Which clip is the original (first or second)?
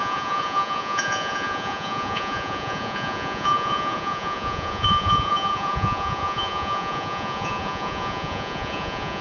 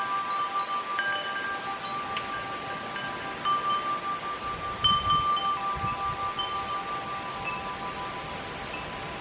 second